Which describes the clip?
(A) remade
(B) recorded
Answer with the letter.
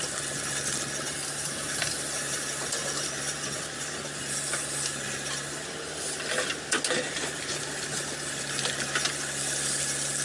B